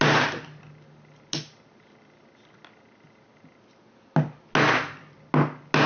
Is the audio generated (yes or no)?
no